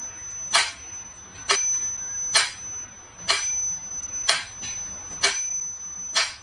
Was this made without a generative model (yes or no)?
yes